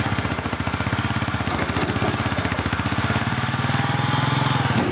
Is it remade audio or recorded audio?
recorded